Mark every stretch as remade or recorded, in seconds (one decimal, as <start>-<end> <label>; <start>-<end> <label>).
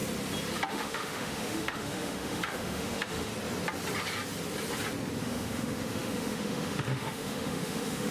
0.0-0.7 recorded; 0.7-3.3 remade; 3.3-5.2 recorded; 5.2-8.1 remade